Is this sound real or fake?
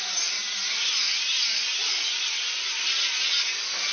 real